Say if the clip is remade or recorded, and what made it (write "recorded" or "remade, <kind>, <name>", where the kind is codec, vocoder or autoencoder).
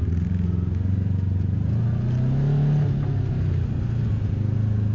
recorded